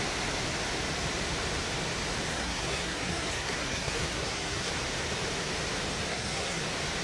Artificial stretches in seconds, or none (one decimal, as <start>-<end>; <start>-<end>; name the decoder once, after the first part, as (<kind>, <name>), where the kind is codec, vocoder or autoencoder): 2.3-4.7 (codec, SNAC); 6.1-6.6